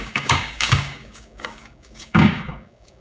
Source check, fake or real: fake